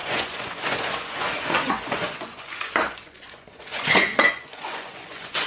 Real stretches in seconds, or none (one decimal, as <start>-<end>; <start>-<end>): none

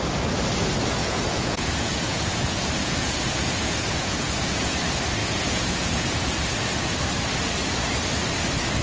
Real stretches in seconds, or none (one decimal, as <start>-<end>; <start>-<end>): 0.0-1.0; 4.8-5.2; 6.2-8.8